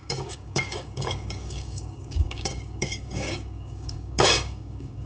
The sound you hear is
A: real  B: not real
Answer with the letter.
B